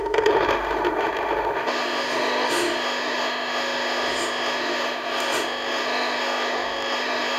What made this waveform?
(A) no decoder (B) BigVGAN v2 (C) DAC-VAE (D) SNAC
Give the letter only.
C